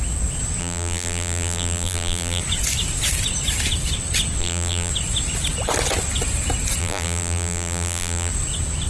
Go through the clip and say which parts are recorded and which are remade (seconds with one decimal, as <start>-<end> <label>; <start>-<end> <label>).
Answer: 0.0-0.6 recorded; 0.6-2.4 remade; 2.4-4.4 recorded; 4.4-4.9 remade; 4.9-6.8 recorded; 6.8-8.3 remade; 8.3-8.9 recorded